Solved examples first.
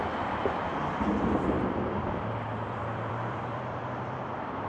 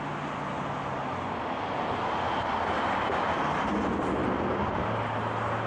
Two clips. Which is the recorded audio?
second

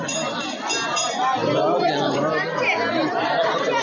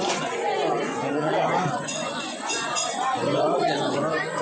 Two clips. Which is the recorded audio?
first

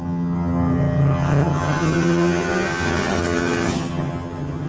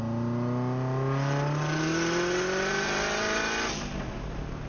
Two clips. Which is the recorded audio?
second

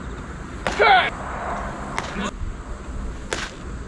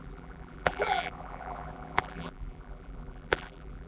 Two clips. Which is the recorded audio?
first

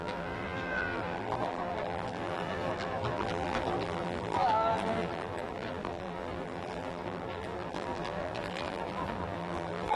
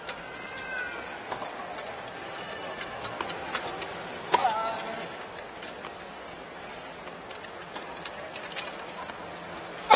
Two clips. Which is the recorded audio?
second